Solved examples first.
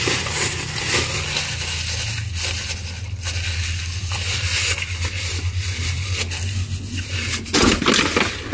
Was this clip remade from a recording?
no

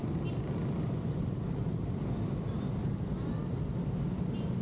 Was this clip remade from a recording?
no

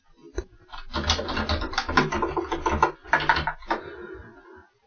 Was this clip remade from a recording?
no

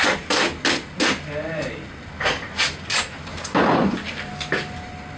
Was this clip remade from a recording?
no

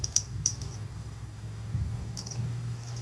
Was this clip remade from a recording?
yes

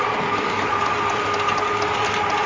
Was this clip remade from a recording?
no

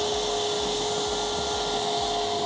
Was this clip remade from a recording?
no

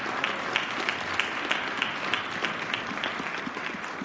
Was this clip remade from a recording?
no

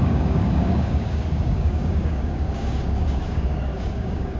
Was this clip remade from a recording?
yes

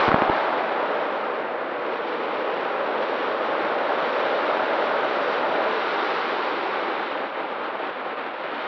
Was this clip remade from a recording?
no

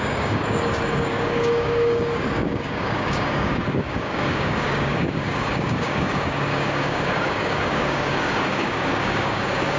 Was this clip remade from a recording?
yes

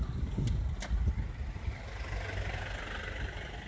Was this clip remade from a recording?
no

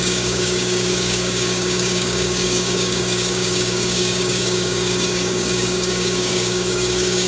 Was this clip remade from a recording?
yes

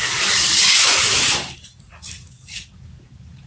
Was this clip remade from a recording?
yes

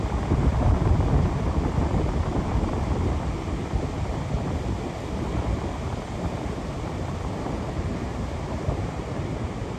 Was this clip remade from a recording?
no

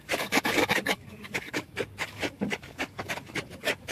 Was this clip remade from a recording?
yes